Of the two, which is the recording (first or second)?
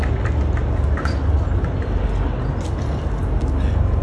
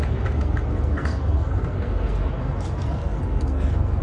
first